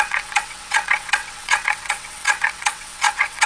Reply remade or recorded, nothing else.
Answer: remade